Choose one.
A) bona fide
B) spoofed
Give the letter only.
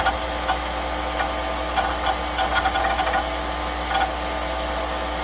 A